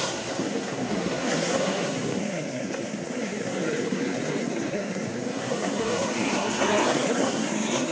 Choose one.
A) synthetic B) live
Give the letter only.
A